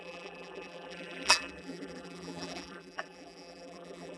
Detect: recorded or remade remade